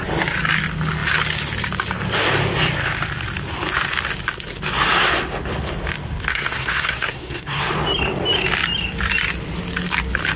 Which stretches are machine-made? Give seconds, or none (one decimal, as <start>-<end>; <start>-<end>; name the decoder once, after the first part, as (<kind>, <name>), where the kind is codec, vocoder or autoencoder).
6.3-7.6 (codec, SNAC)